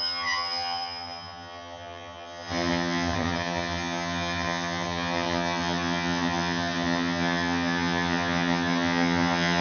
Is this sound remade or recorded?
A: remade